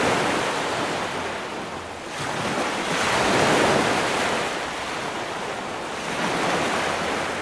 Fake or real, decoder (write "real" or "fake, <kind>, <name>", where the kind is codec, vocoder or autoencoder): real